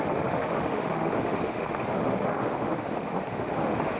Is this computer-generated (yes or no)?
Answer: yes